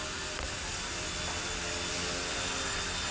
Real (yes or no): yes